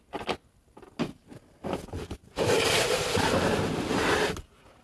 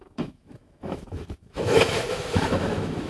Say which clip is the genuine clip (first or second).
first